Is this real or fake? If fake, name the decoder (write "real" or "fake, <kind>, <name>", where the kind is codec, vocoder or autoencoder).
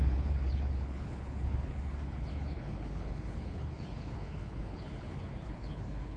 fake, codec, HILCodec